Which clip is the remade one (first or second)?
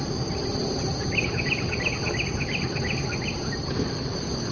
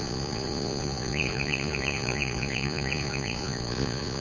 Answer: second